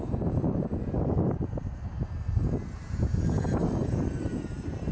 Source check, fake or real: fake